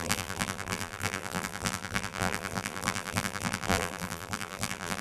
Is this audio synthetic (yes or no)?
yes